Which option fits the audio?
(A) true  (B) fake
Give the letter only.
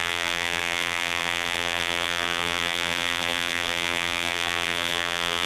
B